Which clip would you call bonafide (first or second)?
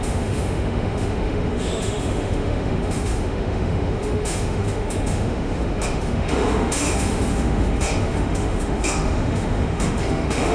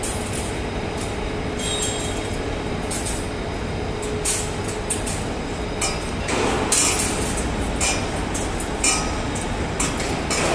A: second